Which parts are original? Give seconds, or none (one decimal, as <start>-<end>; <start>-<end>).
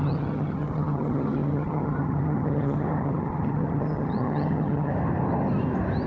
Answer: 4.9-6.1